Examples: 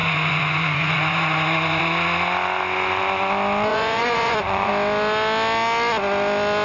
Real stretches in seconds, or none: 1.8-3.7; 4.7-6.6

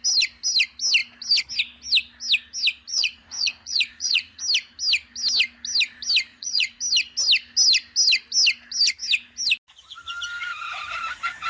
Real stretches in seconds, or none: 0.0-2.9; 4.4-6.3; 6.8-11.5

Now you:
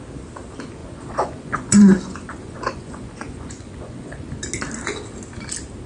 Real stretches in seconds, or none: 0.0-0.8; 4.3-5.9

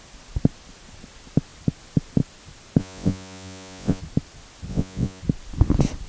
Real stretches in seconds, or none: 0.0-2.8; 4.0-4.7; 5.2-6.1

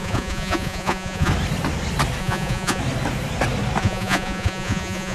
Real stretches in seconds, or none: 1.3-2.2; 2.8-3.8

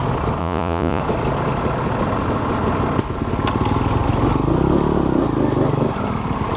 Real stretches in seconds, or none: 0.0-0.4; 1.0-6.6